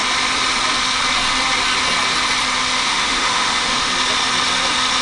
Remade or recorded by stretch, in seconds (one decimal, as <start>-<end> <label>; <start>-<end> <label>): 0.0-2.8 recorded; 2.8-3.9 remade; 3.9-5.0 recorded